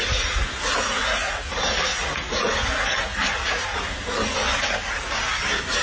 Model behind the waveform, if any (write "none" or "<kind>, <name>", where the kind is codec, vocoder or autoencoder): none